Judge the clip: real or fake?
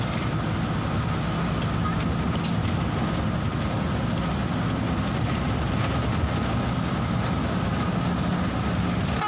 real